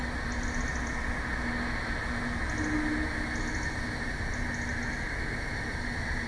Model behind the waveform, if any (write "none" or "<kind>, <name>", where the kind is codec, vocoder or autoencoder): none